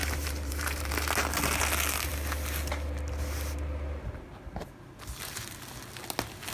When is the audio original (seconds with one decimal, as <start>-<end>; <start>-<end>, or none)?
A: 0.9-6.5